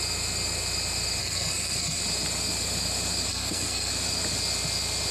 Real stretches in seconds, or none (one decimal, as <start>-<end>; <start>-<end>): 0.0-1.2; 2.0-3.3; 3.9-5.1